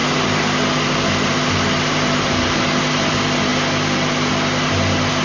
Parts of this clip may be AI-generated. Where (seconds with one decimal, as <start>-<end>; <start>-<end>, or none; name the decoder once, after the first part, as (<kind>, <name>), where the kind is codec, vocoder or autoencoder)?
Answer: none